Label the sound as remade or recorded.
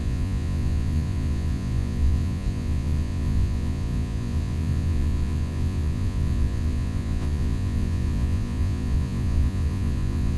remade